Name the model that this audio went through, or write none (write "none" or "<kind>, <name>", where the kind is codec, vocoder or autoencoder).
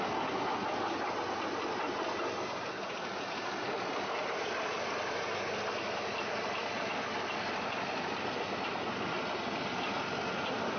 none